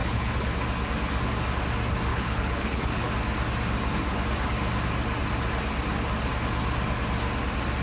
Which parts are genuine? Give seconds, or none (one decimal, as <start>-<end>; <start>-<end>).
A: 0.5-2.1; 3.1-7.8